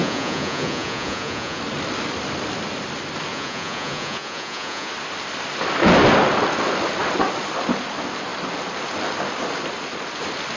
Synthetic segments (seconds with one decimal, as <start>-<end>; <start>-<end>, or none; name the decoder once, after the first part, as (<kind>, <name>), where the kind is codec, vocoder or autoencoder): 0.0-1.6 (vocoder, Vocos); 3.3-4.9